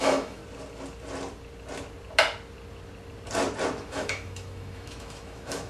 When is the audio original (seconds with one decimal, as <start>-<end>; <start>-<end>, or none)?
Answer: 0.4-3.8